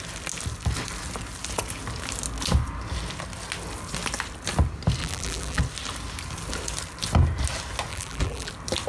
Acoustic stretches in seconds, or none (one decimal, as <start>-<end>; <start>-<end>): 0.0-5.0; 5.6-7.9; 8.5-8.9